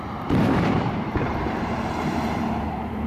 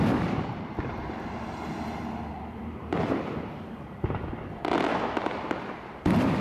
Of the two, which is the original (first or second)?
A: second